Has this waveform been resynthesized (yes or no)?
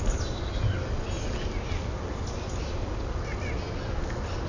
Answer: no